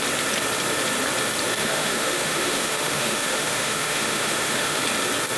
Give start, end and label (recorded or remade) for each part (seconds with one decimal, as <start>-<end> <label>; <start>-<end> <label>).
0.0-1.6 recorded; 1.6-4.8 remade; 4.8-5.4 recorded